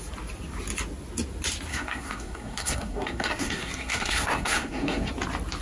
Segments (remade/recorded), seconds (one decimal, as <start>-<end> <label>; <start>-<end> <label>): 0.0-1.7 recorded; 1.7-5.1 remade; 5.1-5.6 recorded